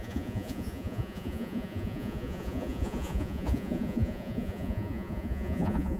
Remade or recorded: remade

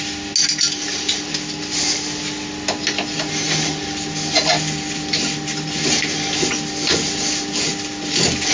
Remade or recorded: recorded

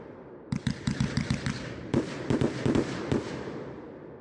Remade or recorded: recorded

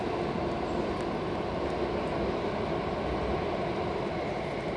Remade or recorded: recorded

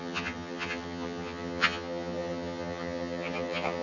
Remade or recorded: remade